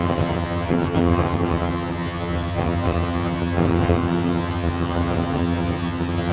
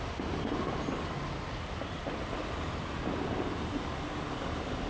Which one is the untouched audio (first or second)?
second